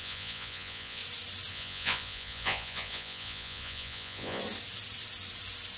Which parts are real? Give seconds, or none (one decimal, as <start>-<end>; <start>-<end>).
1.0-1.5; 4.4-5.8

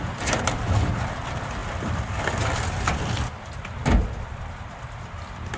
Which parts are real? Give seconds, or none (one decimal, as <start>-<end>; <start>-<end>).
none

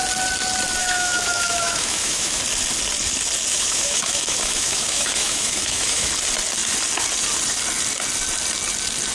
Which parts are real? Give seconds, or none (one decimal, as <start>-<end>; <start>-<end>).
0.0-0.8; 2.4-3.5; 6.1-9.1

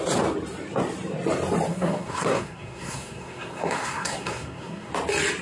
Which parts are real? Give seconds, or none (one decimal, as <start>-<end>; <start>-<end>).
0.0-1.7; 4.9-5.4

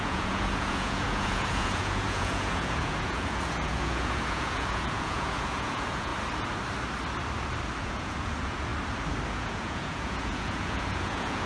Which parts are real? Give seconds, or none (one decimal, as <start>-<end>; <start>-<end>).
6.1-7.8; 8.7-9.3

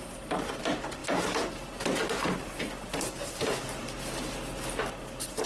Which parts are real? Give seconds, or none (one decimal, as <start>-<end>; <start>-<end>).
0.0-5.5